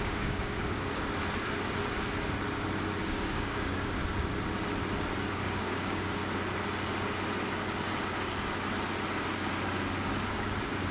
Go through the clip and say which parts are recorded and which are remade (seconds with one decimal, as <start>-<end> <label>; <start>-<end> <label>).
0.0-0.9 remade; 0.9-3.0 recorded; 3.0-4.0 remade; 4.0-5.3 recorded; 5.3-6.2 remade; 6.2-10.3 recorded; 10.3-10.9 remade